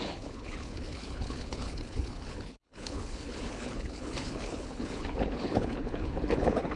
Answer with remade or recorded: remade